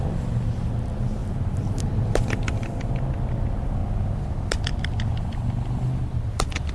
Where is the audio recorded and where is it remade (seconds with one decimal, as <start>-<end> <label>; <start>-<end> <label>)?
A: 0.0-6.7 recorded